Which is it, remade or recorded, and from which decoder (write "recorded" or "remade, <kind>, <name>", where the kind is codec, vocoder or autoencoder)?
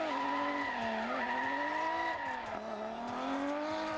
recorded